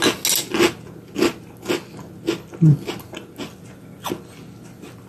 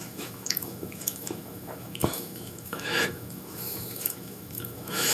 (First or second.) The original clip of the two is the first